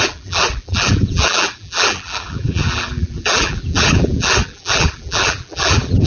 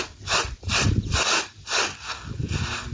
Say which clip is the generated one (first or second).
first